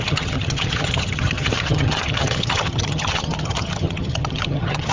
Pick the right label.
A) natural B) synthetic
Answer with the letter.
B